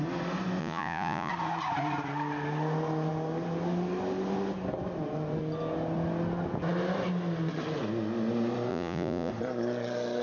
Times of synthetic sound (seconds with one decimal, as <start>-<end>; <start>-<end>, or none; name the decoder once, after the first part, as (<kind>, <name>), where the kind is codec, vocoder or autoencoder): 0.6-1.3 (vocoder, Vocos); 8.7-9.3